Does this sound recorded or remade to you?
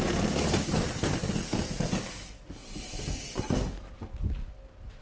recorded